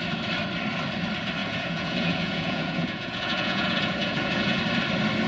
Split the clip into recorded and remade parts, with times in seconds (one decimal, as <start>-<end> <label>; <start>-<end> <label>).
0.0-1.4 recorded; 1.4-4.6 remade; 4.6-5.3 recorded